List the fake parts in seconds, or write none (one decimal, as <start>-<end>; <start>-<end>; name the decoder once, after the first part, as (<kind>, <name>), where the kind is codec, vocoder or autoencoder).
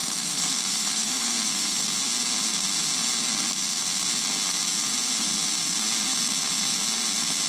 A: 0.0-1.8 (autoencoder, DAC-VAE)